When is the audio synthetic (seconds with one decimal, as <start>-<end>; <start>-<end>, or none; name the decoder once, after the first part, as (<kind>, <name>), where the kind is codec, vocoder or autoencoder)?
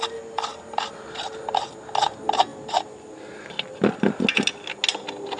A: 0.5-1.6 (vocoder, BigVGAN v2); 2.5-3.1